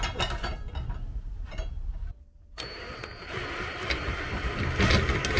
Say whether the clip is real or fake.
real